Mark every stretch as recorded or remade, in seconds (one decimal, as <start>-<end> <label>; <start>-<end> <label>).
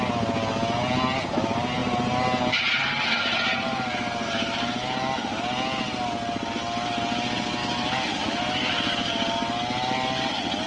0.0-7.6 recorded; 7.6-8.7 remade; 8.7-10.7 recorded